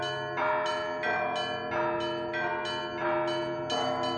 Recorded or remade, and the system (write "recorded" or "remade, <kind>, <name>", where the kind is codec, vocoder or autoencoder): recorded